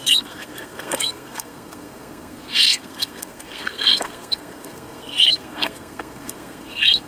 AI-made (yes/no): yes